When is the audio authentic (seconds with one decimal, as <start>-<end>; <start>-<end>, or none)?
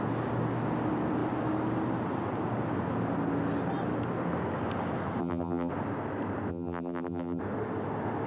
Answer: 0.0-5.2; 5.7-6.5; 7.4-8.3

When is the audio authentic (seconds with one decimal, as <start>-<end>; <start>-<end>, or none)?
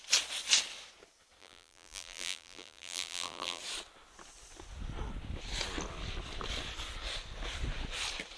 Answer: 0.0-1.4; 3.6-8.4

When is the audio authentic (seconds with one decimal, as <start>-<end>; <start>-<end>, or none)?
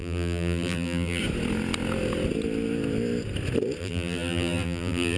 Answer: 1.2-3.8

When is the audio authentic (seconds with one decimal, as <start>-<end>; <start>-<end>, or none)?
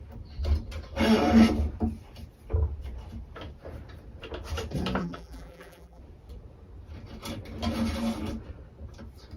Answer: 0.0-5.0; 6.0-9.4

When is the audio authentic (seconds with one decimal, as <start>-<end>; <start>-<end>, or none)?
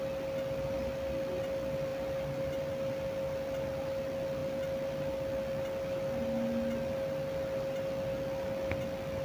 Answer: 0.0-1.9; 2.7-9.2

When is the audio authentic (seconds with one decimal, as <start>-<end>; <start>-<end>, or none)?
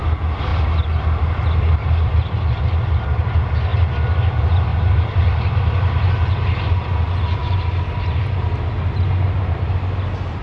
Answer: 0.0-4.7; 6.1-7.4; 9.7-10.4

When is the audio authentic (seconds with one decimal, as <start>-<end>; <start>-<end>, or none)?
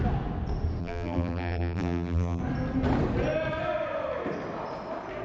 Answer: 0.0-0.8; 2.4-5.2